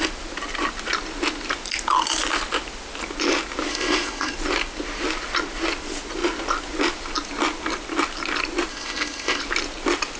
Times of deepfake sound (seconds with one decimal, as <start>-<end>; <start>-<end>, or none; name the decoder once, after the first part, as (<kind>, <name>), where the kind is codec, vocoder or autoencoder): 3.7-4.3 (codec, ZipCodec); 8.7-9.4